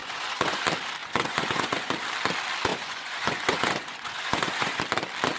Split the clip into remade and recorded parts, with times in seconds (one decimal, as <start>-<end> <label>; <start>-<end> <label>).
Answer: 0.0-0.6 remade; 0.6-1.0 recorded; 1.0-1.9 remade; 1.9-2.7 recorded; 2.7-4.8 remade; 4.8-5.4 recorded